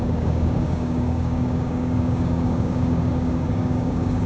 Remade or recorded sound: remade